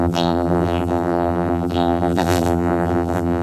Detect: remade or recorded remade